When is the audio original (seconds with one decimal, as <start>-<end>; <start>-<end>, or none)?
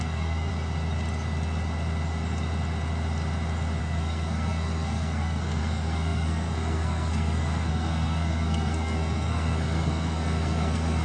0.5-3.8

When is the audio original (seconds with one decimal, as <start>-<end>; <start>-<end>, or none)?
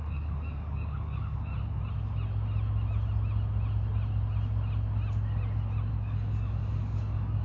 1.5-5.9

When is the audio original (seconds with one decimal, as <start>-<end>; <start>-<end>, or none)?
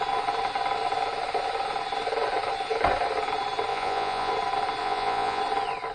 0.0-3.7; 4.3-4.8; 5.4-5.9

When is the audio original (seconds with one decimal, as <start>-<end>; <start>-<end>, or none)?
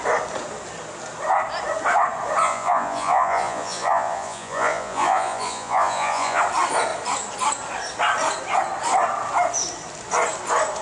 0.0-2.4; 6.4-10.8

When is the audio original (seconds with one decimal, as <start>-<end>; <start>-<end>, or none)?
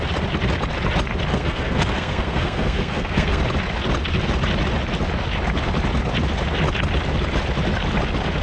0.0-1.3; 3.4-8.4